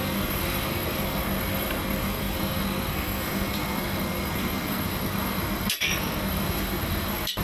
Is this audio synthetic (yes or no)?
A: yes